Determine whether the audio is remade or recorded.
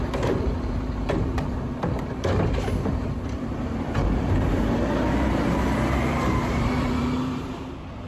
remade